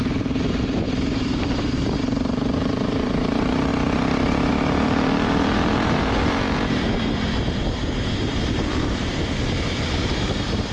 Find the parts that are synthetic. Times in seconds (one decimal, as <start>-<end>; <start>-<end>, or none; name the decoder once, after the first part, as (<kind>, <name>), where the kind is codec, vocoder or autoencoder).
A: 0.0-3.7 (vocoder, BigVGAN v2); 4.5-9.1; 9.9-10.7